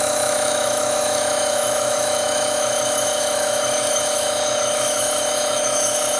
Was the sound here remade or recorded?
remade